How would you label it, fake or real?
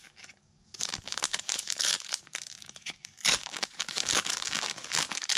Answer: fake